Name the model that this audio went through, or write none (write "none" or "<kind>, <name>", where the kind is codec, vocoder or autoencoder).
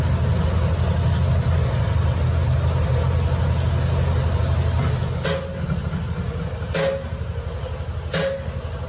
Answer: none